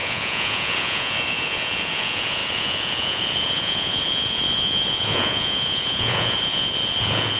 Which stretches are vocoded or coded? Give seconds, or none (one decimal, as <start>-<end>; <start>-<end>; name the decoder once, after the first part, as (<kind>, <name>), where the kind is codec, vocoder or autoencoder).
0.0-7.4 (vocoder, Vocos)